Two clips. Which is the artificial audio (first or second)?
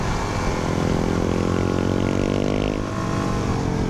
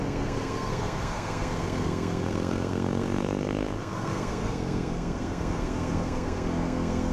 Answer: second